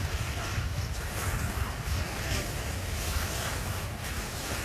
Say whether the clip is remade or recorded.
remade